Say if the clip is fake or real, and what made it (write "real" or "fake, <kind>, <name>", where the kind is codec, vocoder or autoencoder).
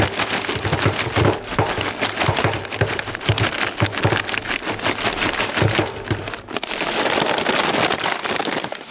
real